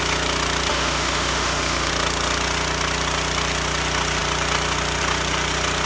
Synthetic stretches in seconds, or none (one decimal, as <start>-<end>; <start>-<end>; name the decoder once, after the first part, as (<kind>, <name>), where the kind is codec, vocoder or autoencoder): 0.7-1.9 (autoencoder, DAC-VAE)